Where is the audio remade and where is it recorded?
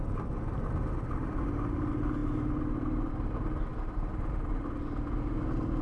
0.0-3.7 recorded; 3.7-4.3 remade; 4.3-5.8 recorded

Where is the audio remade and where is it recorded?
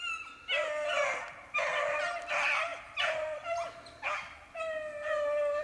0.0-5.6 recorded